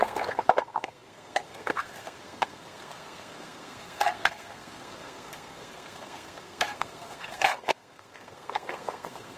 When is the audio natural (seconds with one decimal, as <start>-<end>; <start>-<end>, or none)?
none